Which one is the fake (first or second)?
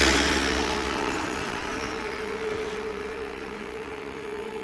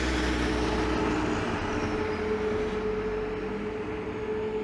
first